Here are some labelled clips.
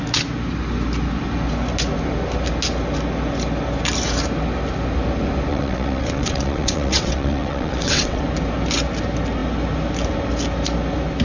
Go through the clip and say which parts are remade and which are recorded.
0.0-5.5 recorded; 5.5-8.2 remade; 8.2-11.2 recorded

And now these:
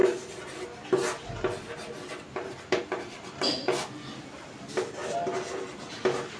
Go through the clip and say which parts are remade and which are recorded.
0.0-6.4 recorded

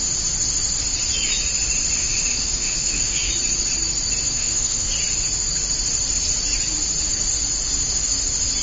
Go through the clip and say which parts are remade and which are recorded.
0.0-2.0 recorded; 2.0-3.3 remade; 3.3-4.3 recorded; 4.3-4.9 remade; 4.9-8.6 recorded

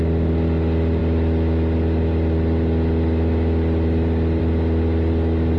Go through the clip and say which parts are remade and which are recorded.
0.0-5.6 recorded